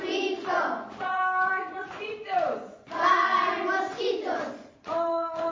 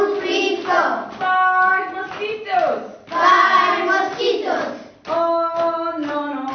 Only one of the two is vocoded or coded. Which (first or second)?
first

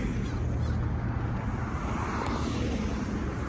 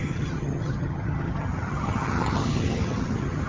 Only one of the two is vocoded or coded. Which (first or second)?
second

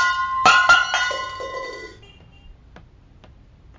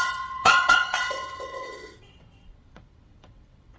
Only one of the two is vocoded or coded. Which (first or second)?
second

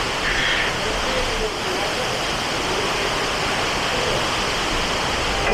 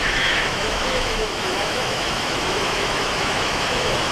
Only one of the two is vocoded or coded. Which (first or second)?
second